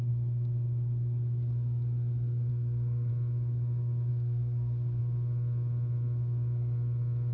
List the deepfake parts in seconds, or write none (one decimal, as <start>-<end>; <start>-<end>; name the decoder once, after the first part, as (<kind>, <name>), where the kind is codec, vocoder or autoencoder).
2.5-3.1 (codec, SNAC); 4.1-5.0